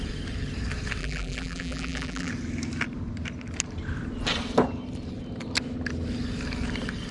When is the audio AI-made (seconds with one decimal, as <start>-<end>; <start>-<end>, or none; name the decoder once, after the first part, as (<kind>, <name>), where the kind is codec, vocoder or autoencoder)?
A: 1.0-2.3 (vocoder, BigVGAN v2)